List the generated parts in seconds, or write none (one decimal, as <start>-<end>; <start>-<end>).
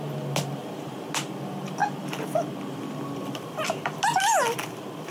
0.6-1.1